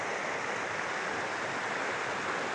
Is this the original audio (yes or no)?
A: yes